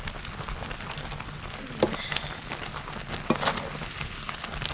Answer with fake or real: real